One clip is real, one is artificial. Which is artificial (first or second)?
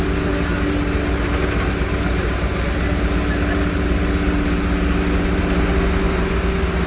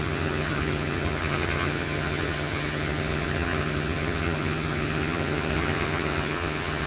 second